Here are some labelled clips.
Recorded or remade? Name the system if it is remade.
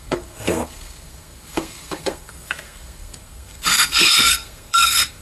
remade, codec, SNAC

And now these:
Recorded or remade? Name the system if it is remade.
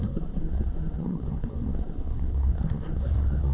remade, codec, SNAC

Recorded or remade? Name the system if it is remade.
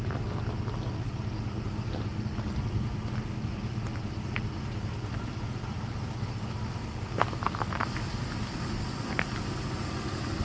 recorded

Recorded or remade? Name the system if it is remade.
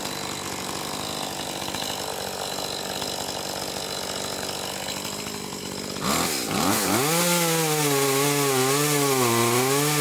recorded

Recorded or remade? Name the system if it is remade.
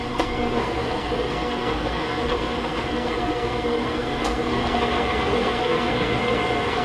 remade, codec, SNAC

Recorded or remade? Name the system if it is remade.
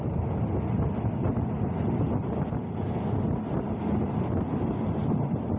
recorded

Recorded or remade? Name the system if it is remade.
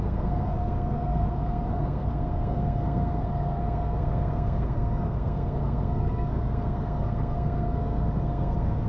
remade, codec, SNAC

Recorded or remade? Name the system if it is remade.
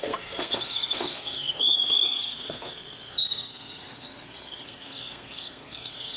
remade, codec, SNAC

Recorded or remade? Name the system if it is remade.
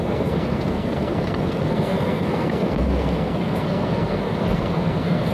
remade, codec, SNAC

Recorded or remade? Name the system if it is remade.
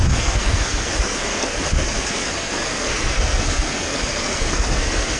remade, codec, SNAC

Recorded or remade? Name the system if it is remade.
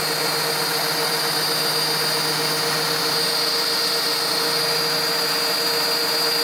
recorded